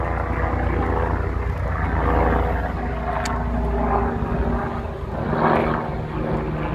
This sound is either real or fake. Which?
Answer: real